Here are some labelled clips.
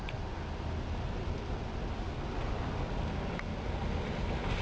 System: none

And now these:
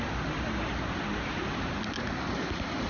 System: none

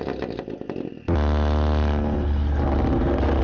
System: none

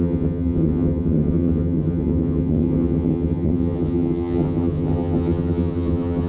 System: vocoder, HiFi-GAN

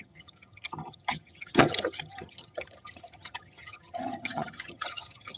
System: vocoder, HiFi-GAN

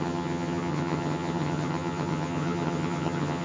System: vocoder, HiFi-GAN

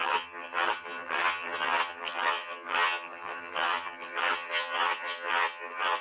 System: vocoder, HiFi-GAN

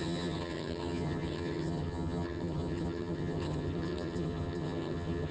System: vocoder, HiFi-GAN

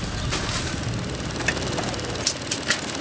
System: none